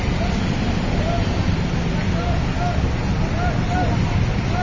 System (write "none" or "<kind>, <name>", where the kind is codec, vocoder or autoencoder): none